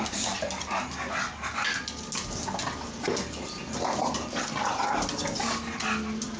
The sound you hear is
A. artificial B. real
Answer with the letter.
B